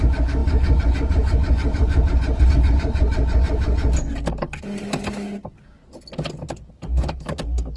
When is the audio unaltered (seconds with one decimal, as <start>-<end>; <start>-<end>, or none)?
5.8-6.7